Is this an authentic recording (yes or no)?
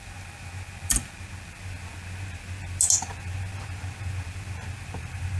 yes